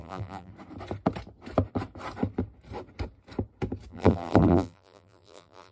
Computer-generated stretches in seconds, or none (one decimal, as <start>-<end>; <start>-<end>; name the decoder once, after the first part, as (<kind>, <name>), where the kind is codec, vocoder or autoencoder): 0.0-0.5 (vocoder, BigVGAN v2); 3.9-5.7

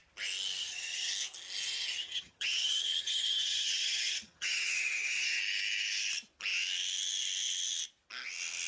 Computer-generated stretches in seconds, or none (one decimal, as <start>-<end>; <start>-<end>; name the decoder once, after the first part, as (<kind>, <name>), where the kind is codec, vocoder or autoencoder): 0.6-1.1 (vocoder, HiFi-GAN); 1.9-5.4

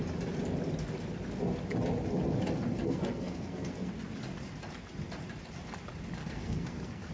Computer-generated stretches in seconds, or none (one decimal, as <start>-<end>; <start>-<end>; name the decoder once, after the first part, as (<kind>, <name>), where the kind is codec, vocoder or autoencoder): 2.8-3.9 (codec, SNAC); 6.2-7.1